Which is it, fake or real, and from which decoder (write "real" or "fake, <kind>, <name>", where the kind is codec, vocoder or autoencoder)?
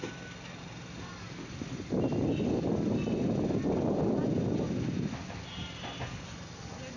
real